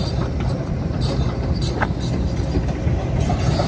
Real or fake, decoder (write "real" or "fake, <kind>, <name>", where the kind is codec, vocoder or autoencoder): real